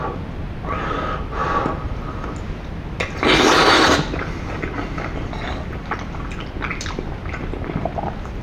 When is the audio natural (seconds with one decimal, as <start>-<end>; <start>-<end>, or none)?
0.0-8.4